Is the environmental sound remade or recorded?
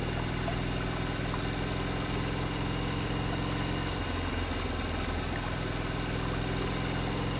recorded